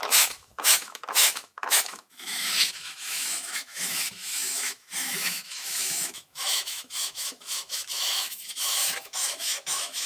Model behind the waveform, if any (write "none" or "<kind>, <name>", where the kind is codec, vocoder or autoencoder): autoencoder, DAC-VAE